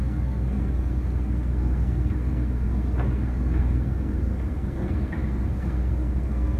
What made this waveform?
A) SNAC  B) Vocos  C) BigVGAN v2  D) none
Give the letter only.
A